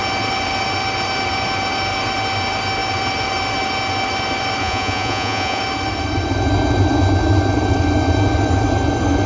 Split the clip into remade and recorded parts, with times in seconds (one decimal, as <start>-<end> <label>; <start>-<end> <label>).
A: 0.0-4.6 recorded; 4.6-5.6 remade; 5.6-9.3 recorded